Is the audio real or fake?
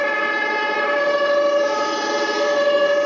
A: real